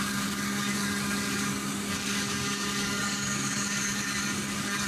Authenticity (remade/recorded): remade